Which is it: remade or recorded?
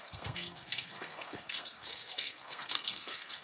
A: remade